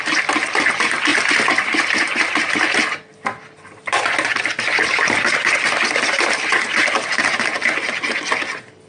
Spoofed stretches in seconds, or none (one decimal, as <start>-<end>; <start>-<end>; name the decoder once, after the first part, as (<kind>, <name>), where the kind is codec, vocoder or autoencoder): none